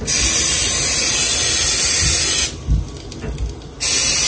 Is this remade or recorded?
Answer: recorded